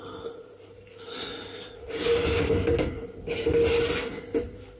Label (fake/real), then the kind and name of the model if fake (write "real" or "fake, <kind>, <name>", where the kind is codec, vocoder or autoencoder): real